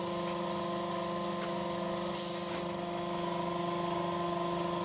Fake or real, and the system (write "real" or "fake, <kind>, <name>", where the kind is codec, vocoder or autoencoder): real